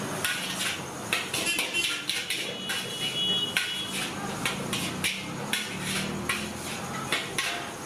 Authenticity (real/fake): real